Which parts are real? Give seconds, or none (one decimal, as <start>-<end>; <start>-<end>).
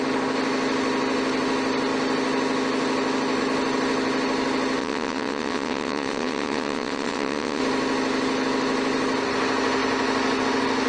0.0-4.8; 7.6-10.9